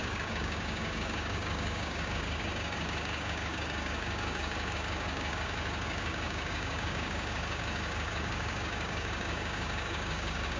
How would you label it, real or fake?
fake